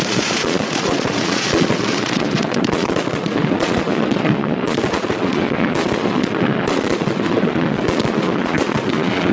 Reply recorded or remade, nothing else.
remade